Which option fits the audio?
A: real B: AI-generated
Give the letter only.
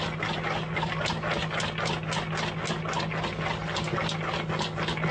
A